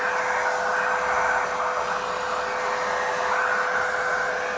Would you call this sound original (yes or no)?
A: yes